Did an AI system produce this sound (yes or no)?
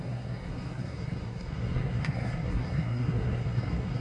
yes